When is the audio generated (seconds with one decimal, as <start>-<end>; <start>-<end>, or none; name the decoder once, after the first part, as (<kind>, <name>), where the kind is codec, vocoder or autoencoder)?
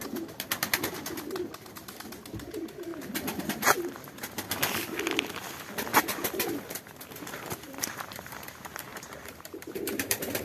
5.9-8.4 (vocoder, BigVGAN v2); 8.9-10.4